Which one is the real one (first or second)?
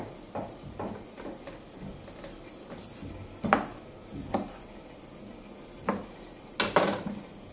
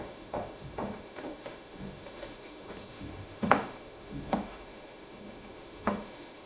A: first